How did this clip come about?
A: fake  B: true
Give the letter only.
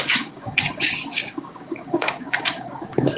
A